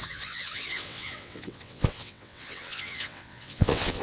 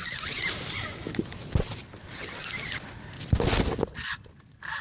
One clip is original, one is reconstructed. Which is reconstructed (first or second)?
first